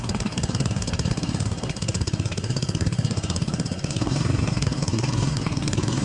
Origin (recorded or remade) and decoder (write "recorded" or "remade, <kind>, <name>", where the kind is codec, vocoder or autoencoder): remade, codec, SNAC